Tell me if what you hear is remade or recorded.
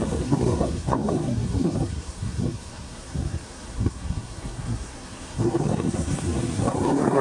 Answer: remade